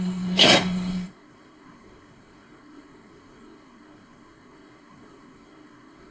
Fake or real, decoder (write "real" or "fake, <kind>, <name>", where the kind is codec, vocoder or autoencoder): fake, codec, SNAC